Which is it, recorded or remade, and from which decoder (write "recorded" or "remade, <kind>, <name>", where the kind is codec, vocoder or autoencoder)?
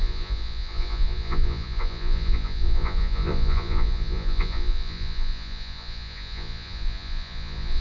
remade, vocoder, Vocos